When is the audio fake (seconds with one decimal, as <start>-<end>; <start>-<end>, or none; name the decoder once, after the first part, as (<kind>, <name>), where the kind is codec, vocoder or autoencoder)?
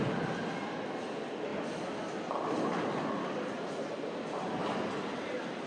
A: none